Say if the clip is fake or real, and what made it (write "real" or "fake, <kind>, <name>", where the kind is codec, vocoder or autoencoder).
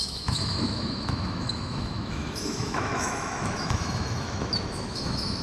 fake, autoencoder, DAC-VAE